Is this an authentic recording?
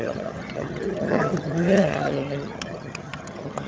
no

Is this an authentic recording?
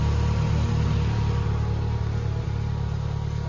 yes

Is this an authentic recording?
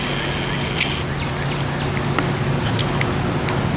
yes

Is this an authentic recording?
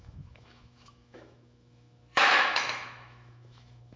no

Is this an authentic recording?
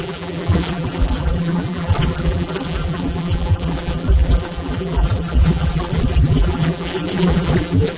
no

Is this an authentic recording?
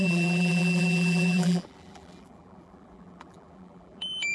no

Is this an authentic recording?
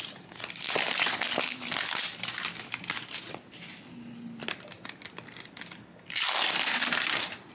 yes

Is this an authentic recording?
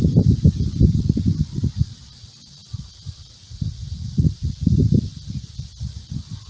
no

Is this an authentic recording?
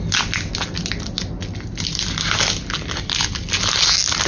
yes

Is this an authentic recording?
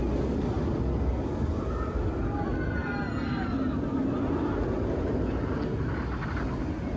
yes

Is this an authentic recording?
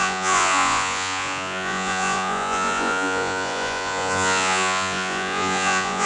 no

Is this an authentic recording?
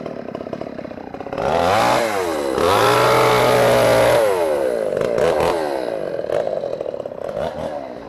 yes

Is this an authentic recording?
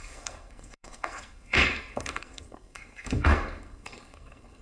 no